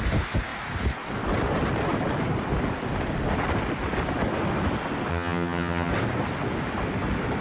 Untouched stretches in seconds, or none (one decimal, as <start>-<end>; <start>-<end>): 0.0-5.1; 5.9-7.4

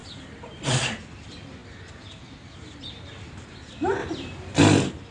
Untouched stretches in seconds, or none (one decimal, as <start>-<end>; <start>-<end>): 0.0-5.1

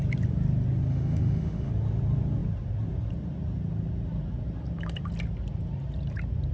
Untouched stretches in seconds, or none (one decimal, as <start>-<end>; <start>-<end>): 0.0-0.9; 1.7-6.5

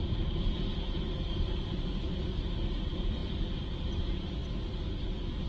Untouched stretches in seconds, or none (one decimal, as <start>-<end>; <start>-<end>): 0.0-5.5

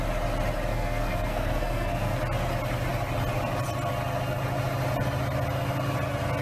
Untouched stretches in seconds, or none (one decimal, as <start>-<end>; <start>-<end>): 0.0-0.7; 2.2-6.4

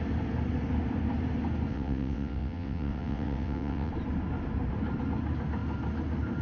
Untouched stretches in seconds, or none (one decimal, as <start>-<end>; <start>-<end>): 0.0-1.7; 3.9-6.4